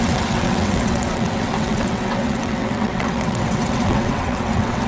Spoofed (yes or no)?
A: yes